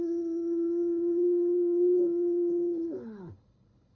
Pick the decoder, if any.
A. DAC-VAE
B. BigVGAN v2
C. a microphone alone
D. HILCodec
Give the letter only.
D